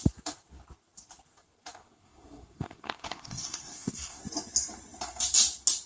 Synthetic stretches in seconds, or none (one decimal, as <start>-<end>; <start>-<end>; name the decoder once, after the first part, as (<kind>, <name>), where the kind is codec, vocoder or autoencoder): 1.8-4.2 (codec, SNAC)